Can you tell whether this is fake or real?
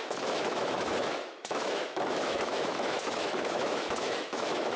fake